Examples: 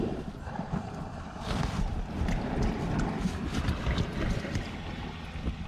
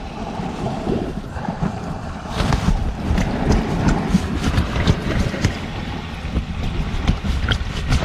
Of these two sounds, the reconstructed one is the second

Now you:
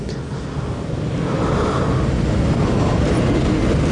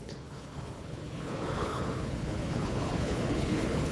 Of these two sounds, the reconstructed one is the second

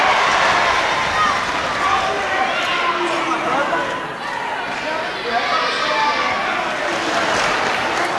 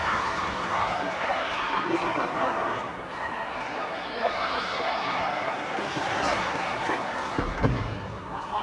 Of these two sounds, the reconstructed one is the second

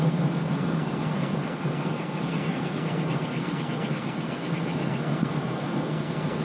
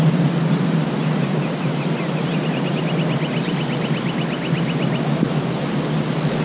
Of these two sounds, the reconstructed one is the first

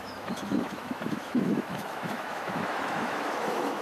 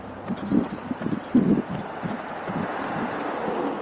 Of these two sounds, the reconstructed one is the first